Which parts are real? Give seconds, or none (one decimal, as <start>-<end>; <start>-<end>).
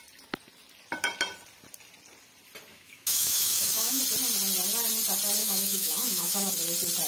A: 0.0-2.7; 4.0-5.4; 6.5-7.1